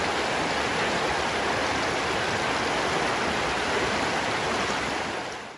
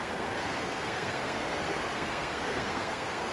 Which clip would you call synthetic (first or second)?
second